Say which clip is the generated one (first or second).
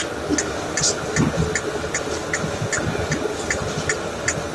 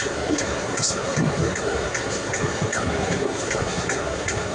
second